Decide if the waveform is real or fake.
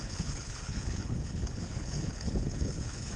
fake